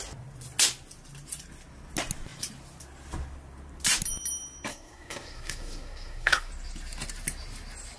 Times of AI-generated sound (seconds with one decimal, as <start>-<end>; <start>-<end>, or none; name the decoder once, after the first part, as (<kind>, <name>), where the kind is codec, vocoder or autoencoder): 4.7-6.5 (codec, SNAC)